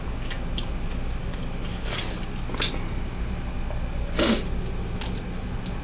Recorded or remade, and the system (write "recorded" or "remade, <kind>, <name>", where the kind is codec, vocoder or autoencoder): recorded